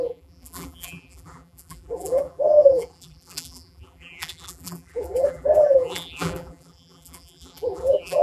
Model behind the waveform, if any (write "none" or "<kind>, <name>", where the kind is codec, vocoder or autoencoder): vocoder, BigVGAN v2